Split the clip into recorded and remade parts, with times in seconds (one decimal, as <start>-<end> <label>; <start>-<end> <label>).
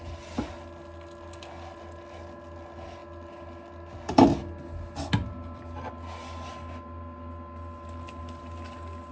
0.0-9.1 recorded